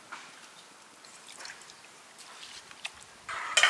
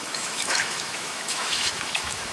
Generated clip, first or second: second